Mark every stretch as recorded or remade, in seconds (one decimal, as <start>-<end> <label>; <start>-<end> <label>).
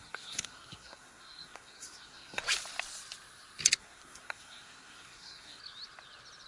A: 0.0-2.4 remade; 2.4-3.8 recorded; 3.8-5.6 remade; 5.6-6.5 recorded